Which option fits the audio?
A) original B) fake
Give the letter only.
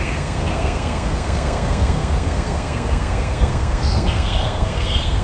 B